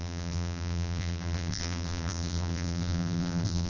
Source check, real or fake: fake